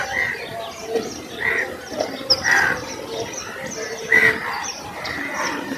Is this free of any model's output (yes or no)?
no